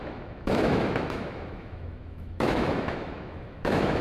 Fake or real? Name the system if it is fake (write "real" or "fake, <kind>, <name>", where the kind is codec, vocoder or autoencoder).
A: fake, autoencoder, DAC-VAE